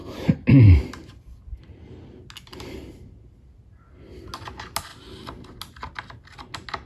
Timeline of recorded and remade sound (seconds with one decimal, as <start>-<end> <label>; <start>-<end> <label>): 0.0-6.9 recorded